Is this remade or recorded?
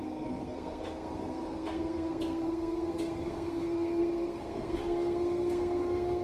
remade